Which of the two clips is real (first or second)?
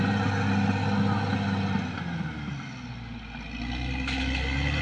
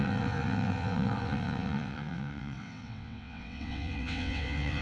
first